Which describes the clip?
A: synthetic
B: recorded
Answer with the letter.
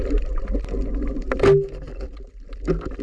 B